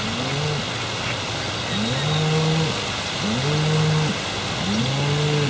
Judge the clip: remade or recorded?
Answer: recorded